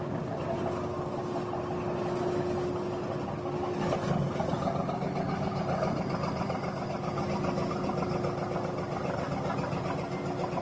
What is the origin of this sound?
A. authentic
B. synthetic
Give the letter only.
A